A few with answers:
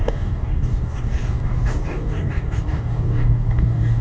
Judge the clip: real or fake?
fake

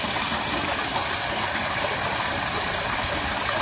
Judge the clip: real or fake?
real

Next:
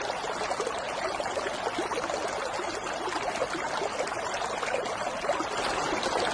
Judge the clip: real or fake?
real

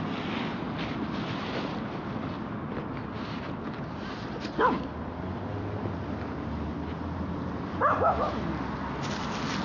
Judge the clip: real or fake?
real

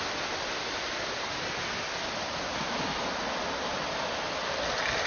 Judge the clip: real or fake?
fake